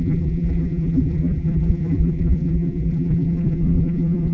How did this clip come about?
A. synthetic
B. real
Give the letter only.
A